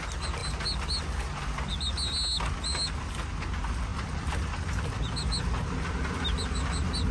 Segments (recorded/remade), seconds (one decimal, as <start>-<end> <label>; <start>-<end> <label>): 0.0-7.1 recorded